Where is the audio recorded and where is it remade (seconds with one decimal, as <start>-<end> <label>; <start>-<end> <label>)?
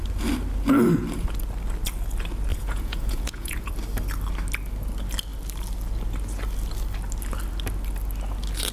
0.0-2.5 recorded; 2.5-3.7 remade; 3.7-8.7 recorded